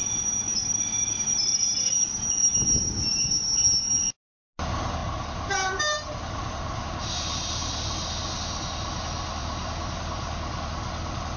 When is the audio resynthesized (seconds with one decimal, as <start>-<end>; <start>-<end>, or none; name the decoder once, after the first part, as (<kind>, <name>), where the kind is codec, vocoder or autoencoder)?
1.4-2.3 (vocoder, BigVGAN v2); 5.0-7.7